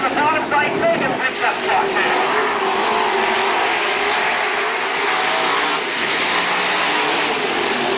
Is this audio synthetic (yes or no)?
no